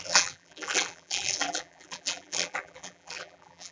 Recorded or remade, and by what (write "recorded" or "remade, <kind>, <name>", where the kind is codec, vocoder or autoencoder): remade, vocoder, BigVGAN v2